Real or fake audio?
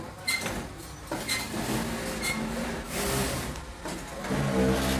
real